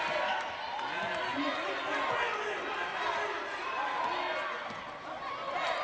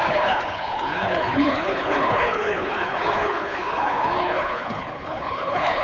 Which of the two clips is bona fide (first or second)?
first